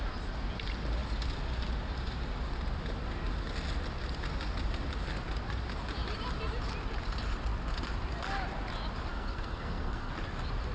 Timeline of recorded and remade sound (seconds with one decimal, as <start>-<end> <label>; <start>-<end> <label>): 0.0-9.1 recorded; 9.1-10.1 remade; 10.1-10.7 recorded